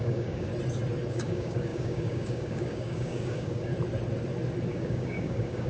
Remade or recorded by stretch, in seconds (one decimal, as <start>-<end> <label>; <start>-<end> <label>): 0.0-0.5 remade; 0.5-1.1 recorded; 1.1-3.7 remade; 3.7-4.7 recorded; 4.7-5.7 remade